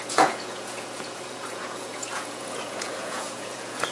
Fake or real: fake